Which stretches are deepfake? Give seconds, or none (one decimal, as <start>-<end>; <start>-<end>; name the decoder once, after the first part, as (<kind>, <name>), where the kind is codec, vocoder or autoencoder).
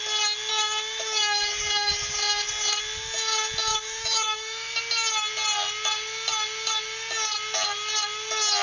0.5-1.9 (autoencoder, DAC-VAE); 3.7-4.7